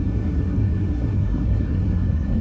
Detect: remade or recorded remade